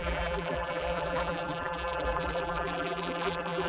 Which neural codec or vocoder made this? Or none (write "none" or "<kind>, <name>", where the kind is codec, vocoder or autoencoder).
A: vocoder, BigVGAN v2